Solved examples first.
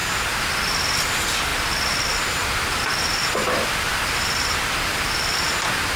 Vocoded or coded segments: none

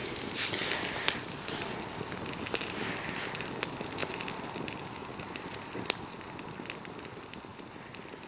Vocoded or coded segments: 7.5-8.3 (vocoder, BigVGAN v2)

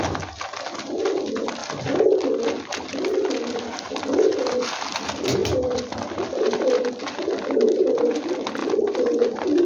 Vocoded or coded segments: none

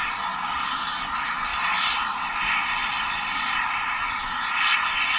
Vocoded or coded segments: 2.8-3.9 (vocoder, BigVGAN v2)

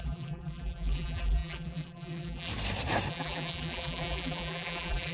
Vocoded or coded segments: 0.0-2.5 (vocoder, BigVGAN v2); 3.1-5.1